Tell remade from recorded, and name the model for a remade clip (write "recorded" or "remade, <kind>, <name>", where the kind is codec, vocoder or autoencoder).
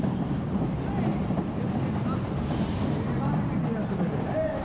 recorded